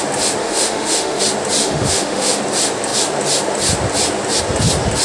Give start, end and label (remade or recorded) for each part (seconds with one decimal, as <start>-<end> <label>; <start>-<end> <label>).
0.0-0.4 recorded; 0.4-1.2 remade; 1.2-1.6 recorded; 1.6-2.4 remade; 2.4-5.0 recorded